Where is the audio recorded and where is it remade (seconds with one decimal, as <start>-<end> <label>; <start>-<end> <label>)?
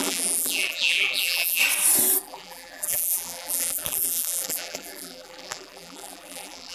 0.0-1.6 remade; 1.6-2.2 recorded; 2.2-6.7 remade